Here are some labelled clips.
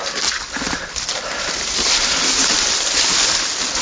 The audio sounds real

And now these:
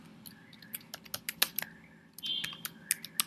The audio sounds real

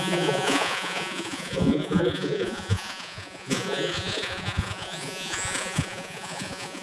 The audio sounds fake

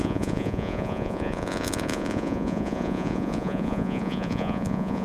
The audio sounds fake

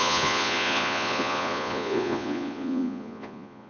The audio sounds fake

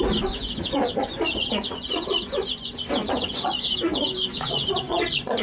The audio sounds fake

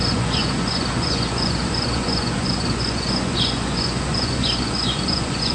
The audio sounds fake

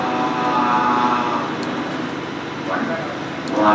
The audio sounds real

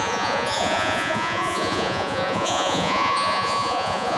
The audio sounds fake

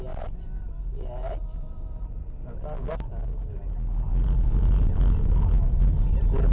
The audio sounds real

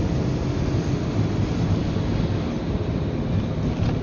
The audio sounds real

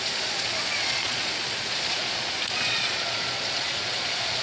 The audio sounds fake